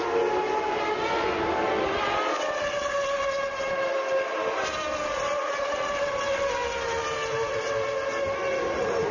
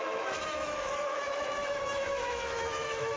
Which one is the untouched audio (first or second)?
first